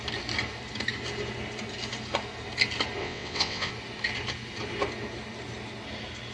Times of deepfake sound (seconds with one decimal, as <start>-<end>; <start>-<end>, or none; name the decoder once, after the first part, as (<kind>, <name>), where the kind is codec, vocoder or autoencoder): 3.0-3.7 (vocoder, WaveNeXt)